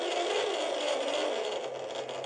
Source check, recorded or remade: recorded